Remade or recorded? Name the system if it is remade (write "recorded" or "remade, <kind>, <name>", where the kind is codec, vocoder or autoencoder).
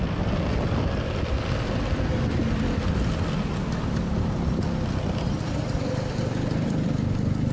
recorded